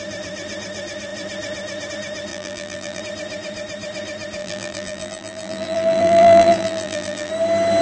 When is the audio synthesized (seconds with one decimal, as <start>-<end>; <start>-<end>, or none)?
2.3-3.0; 4.4-7.3